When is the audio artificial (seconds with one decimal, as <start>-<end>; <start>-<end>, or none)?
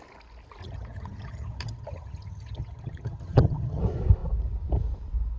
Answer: 0.6-3.8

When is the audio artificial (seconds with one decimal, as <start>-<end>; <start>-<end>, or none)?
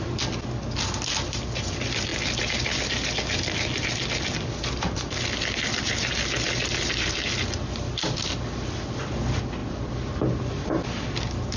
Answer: none